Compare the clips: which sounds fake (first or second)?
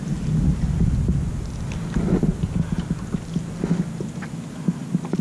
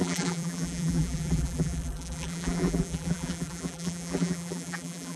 second